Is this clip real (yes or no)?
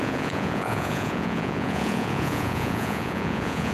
no